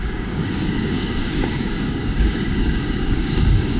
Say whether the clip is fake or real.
fake